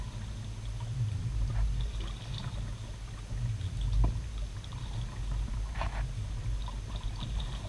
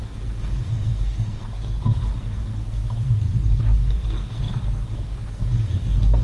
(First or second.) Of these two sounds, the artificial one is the second